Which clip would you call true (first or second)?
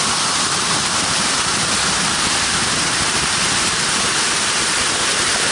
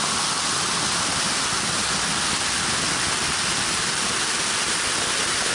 second